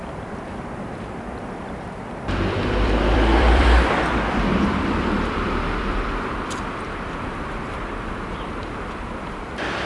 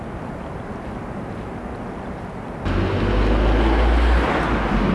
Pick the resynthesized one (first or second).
first